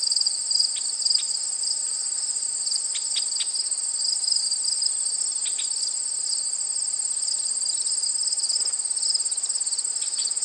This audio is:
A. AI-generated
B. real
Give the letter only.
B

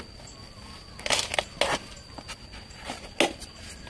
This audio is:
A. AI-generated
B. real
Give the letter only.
B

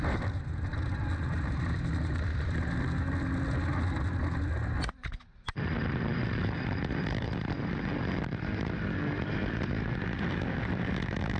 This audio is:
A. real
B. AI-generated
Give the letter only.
A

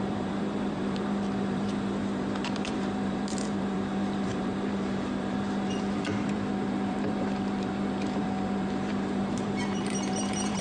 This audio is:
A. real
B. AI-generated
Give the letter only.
B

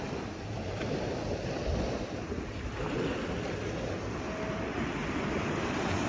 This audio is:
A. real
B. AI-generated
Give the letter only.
A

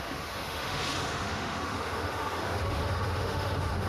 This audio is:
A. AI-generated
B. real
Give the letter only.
A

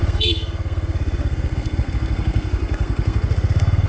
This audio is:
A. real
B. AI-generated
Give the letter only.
B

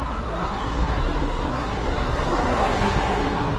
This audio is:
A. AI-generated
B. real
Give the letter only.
A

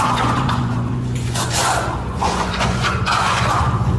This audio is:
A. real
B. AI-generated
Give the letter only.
B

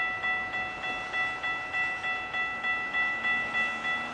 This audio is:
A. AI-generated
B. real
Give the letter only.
B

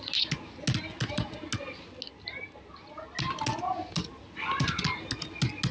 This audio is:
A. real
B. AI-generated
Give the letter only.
A